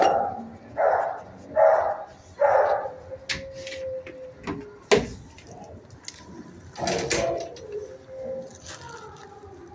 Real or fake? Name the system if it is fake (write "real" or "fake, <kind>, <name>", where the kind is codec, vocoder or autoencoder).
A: real